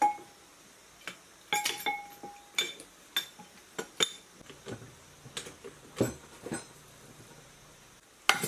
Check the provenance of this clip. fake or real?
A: real